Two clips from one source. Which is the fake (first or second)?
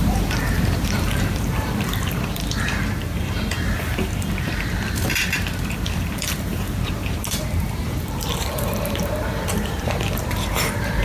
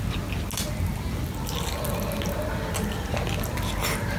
first